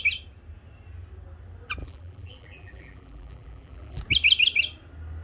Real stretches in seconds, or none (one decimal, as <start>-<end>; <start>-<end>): 0.0-1.8; 4.0-5.2